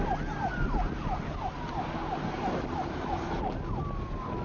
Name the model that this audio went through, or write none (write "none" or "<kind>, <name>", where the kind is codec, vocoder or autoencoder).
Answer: none